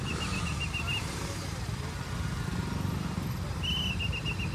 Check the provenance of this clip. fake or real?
real